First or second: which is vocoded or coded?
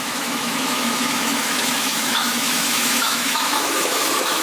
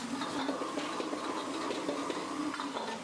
first